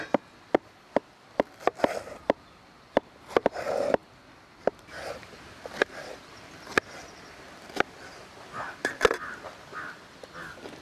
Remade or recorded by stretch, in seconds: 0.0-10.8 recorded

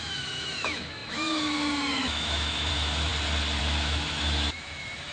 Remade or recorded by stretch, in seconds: 0.0-3.1 remade; 3.1-3.6 recorded; 3.6-5.1 remade

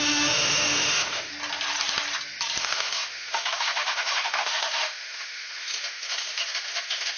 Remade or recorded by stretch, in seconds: 0.0-1.3 remade; 1.3-2.6 recorded; 2.6-7.2 remade

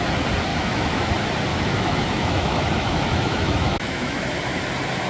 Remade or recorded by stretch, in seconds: 0.0-0.5 recorded; 0.5-1.1 remade; 1.1-1.5 recorded; 1.5-4.6 remade; 4.6-5.1 recorded

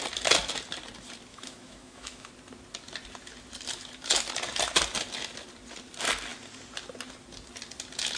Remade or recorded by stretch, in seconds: 0.0-1.3 recorded; 1.3-2.3 remade; 2.3-8.2 recorded

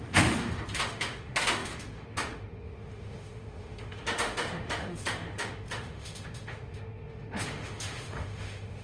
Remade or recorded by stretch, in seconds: 0.0-8.8 remade

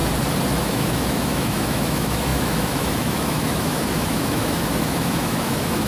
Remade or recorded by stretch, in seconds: 0.0-0.6 recorded; 0.6-5.9 remade